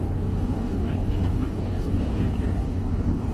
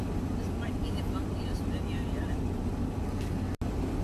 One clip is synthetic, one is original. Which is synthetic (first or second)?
first